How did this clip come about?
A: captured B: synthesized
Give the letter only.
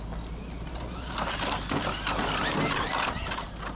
A